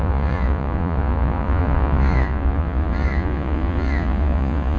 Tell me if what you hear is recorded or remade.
remade